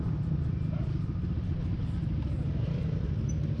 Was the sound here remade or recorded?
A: recorded